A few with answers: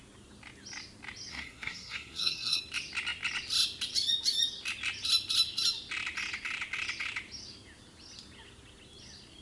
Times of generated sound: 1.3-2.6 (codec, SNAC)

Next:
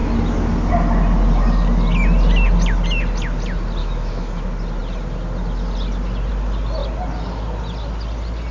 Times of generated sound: 3.8-4.3 (autoencoder, DAC-VAE)

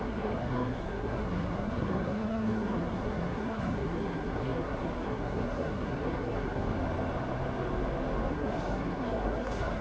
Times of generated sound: 0.0-6.7 (codec, SNAC); 8.3-9.8

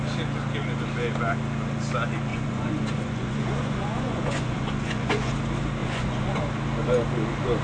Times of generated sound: 2.3-5.3 (vocoder, Vocos); 5.8-6.4

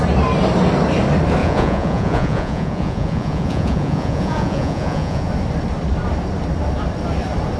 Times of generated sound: 1.4-5.3 (vocoder, Vocos)

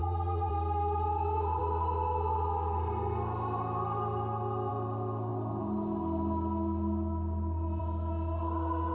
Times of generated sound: 0.0-0.5 (vocoder, Vocos)